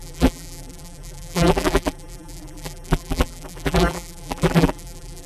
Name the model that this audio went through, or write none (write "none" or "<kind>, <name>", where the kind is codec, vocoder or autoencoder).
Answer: vocoder, BigVGAN v2